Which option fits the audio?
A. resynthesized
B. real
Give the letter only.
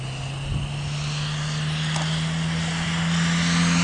B